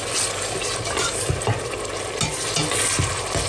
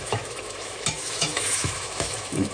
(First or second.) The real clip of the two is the first